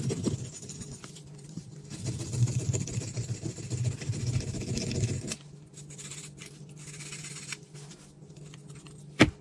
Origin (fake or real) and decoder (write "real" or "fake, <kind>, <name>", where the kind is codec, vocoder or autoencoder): real